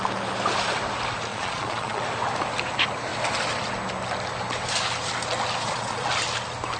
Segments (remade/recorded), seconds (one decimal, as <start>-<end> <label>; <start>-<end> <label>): 0.0-1.3 recorded; 1.3-2.0 remade; 2.0-5.6 recorded; 5.6-6.1 remade; 6.1-6.8 recorded